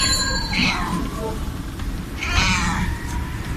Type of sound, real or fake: real